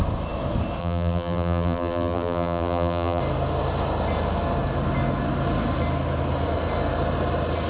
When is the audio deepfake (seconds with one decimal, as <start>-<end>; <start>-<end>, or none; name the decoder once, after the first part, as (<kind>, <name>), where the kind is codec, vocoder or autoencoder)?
0.8-3.2 (vocoder, BigVGAN v2)